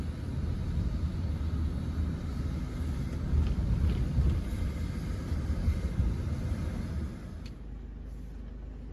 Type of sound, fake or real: real